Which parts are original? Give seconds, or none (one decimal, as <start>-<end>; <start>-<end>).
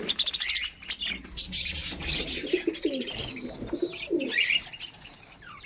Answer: 0.6-2.2; 3.8-5.1